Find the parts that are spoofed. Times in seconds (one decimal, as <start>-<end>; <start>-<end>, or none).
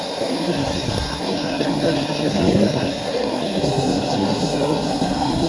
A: 0.0-5.5